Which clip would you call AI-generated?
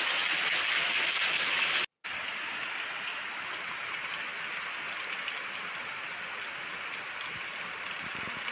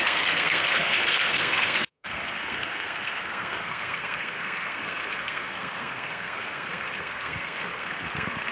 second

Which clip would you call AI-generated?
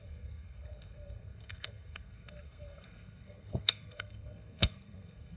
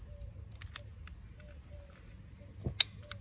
first